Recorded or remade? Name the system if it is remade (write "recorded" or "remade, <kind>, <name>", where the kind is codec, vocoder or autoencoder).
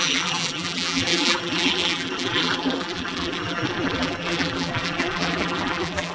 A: remade, vocoder, BigVGAN v2